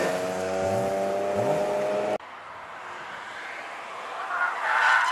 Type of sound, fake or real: real